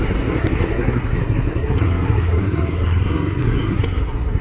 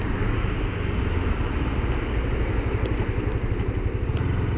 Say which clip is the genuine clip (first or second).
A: second